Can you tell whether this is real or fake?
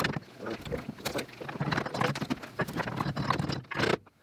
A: real